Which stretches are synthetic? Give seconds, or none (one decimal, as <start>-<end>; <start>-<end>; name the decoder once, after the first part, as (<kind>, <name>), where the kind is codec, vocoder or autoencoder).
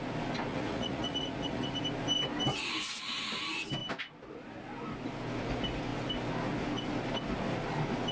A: 0.5-1.8 (vocoder, Vocos)